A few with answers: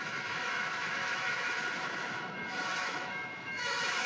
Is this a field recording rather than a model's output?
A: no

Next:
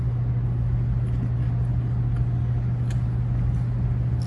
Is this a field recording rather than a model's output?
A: yes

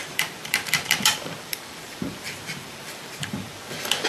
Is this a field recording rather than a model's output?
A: no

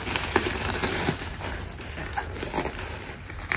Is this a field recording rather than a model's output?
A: no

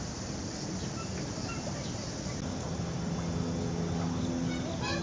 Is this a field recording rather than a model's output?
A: yes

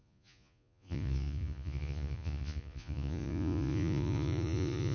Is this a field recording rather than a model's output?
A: no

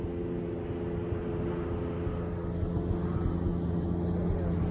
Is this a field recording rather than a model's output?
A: yes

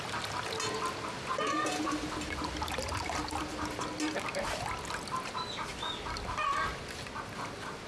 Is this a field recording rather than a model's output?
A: yes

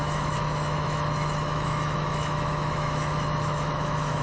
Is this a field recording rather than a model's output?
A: no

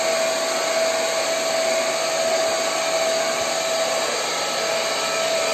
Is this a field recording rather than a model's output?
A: yes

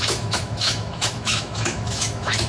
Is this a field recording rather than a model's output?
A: no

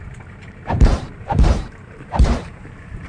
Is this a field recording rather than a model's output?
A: no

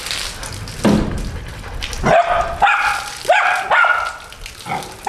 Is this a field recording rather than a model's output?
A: yes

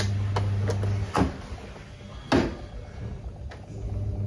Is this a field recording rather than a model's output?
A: yes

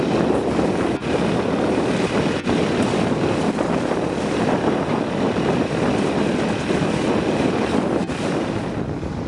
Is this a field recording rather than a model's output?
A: yes